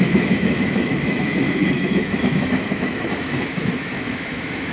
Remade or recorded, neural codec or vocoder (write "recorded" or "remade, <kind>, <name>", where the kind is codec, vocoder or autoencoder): remade, autoencoder, DAC-VAE